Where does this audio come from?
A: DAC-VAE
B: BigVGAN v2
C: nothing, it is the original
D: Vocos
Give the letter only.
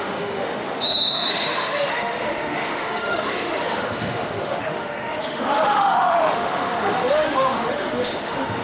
A